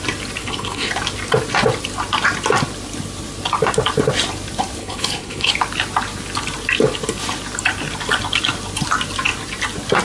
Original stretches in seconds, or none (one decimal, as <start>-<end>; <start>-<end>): 0.0-0.4; 0.9-4.8; 5.5-10.0